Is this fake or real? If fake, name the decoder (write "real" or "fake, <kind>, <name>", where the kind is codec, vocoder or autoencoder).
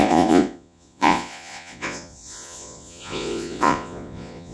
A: fake, vocoder, Vocos